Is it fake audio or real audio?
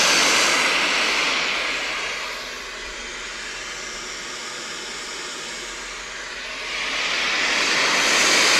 real